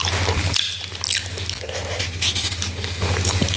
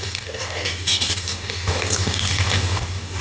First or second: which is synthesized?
second